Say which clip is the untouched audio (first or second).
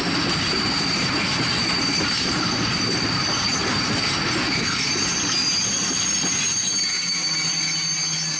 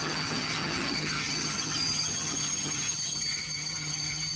first